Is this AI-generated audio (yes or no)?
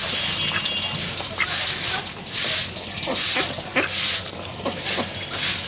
no